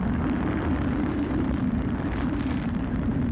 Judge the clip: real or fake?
real